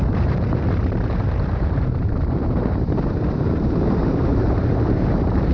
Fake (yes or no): yes